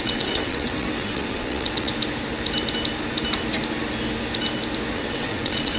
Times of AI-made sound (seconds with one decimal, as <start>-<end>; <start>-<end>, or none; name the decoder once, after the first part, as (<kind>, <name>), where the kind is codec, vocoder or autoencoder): 0.0-1.9 (vocoder, WaveNeXt); 4.9-5.8